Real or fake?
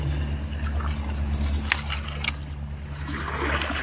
real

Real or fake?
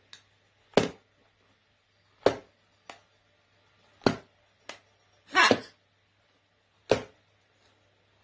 real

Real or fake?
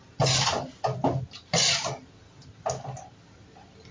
real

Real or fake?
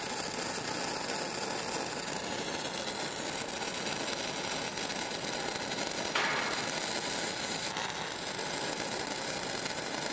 real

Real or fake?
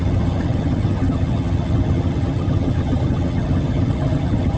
fake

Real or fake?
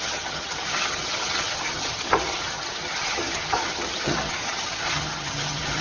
fake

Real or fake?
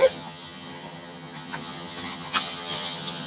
fake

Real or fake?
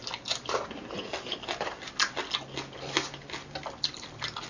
real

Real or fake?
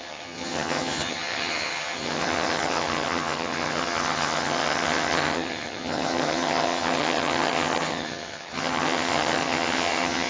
fake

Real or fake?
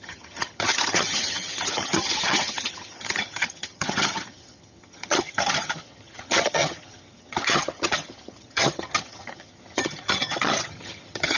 fake